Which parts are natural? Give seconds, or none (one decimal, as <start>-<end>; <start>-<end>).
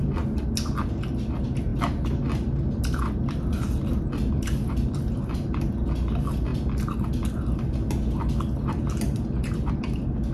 0.0-10.3